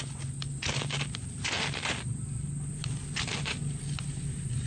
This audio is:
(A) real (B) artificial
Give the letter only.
A